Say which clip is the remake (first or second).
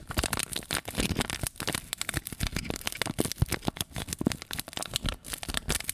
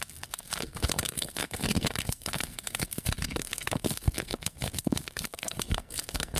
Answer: second